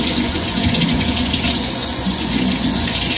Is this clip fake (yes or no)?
yes